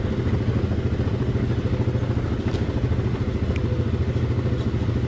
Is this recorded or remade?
recorded